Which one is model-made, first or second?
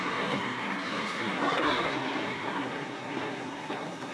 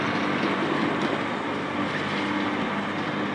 first